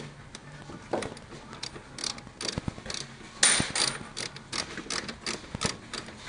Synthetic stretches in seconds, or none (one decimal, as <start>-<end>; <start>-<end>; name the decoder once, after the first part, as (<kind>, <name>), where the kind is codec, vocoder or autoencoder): none